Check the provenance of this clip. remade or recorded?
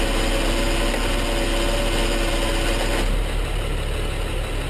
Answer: recorded